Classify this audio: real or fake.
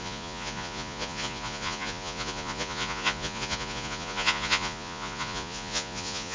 fake